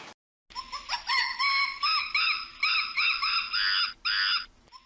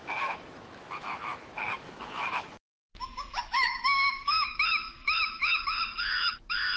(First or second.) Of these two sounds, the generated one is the second